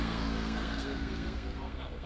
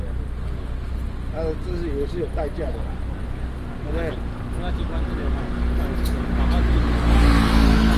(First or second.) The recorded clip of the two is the second